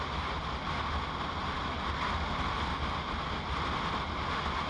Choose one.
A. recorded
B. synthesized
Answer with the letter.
A